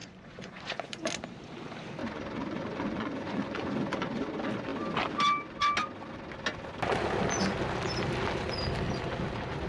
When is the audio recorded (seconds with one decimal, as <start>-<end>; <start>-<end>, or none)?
1.1-2.0; 4.3-9.7